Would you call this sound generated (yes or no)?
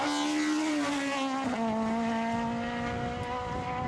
no